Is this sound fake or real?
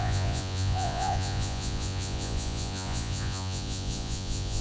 fake